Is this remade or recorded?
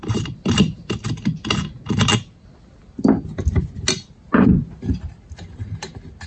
recorded